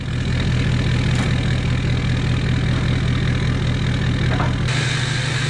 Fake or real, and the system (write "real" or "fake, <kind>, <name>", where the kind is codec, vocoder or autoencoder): real